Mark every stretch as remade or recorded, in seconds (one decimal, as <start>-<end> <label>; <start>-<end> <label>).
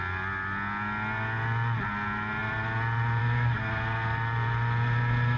0.0-5.4 recorded